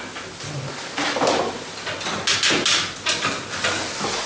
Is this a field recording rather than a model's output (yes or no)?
yes